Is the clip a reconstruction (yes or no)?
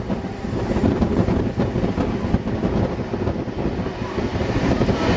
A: no